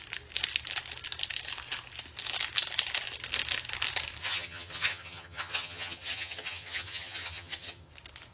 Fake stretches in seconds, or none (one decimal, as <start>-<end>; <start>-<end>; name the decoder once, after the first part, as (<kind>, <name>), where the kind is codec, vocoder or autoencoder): 4.2-7.9 (vocoder, HiFi-GAN)